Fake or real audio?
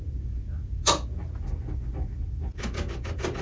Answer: real